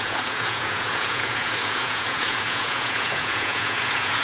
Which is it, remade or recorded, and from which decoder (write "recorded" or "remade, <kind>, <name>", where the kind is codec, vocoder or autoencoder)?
remade, vocoder, Vocos